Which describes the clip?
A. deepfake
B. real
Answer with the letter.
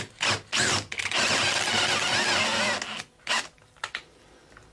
B